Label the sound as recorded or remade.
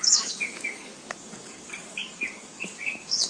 remade